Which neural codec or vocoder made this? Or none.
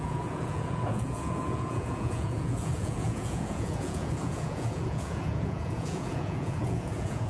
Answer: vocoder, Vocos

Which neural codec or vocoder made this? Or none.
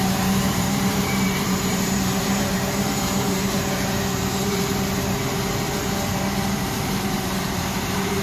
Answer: vocoder, BigVGAN v2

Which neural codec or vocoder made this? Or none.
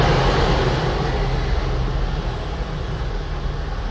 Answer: none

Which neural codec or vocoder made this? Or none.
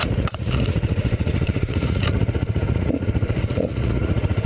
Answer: vocoder, Vocos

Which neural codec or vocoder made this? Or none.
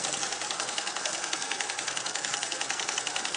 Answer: codec, SNAC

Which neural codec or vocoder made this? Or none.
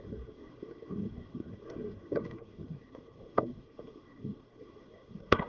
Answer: codec, SNAC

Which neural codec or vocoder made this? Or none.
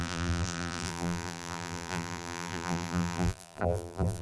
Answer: vocoder, BigVGAN v2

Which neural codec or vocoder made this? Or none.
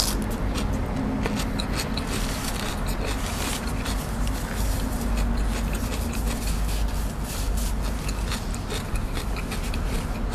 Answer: none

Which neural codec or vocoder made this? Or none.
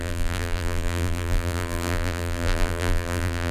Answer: vocoder, BigVGAN v2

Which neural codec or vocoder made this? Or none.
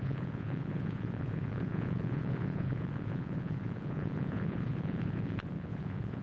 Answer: vocoder, Vocos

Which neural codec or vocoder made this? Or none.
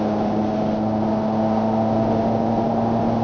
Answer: none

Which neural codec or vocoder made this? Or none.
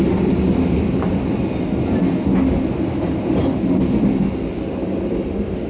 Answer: none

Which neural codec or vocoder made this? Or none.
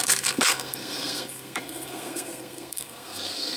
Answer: codec, SNAC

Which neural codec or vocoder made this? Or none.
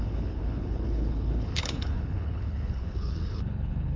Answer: codec, HILCodec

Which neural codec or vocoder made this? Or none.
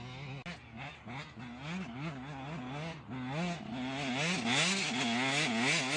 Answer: none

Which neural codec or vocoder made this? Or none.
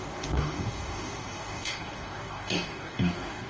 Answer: codec, DAC